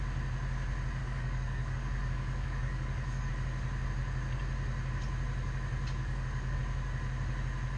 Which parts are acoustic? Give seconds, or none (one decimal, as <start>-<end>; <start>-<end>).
0.0-1.0; 3.3-6.0; 6.6-7.8